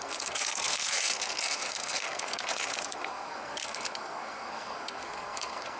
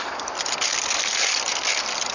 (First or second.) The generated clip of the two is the first